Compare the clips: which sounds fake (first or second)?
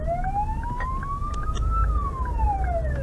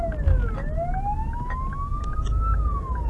first